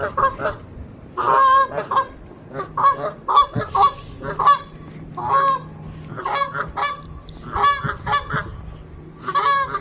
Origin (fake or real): real